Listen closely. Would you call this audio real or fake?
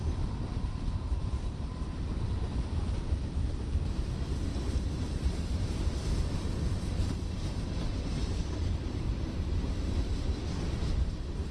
fake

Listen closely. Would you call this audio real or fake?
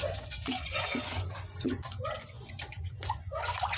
fake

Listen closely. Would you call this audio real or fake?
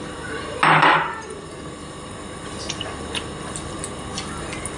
real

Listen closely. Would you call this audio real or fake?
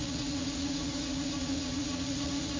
fake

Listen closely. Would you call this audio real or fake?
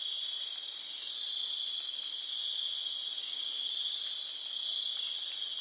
real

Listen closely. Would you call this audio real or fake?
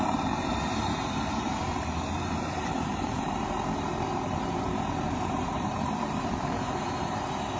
fake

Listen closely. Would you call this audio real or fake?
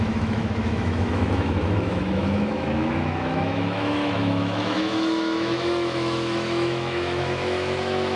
fake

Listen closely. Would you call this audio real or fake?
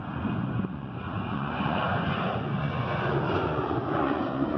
fake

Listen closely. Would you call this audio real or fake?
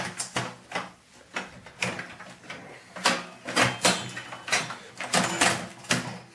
real